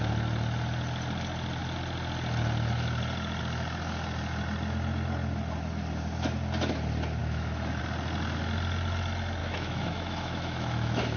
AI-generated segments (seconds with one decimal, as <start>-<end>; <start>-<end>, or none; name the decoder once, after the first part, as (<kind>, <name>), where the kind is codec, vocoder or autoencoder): 7.2-7.8 (autoencoder, DAC-VAE); 9.4-11.2